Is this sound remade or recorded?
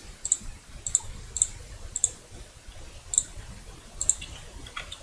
recorded